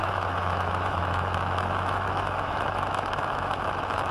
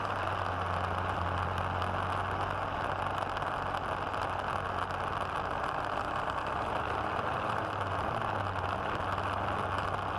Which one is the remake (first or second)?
first